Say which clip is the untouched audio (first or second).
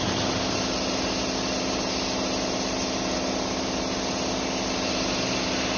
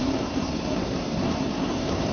first